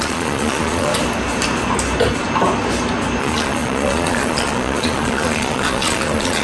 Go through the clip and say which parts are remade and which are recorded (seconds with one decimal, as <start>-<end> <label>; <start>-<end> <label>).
0.0-0.9 remade; 0.9-3.2 recorded; 3.2-6.4 remade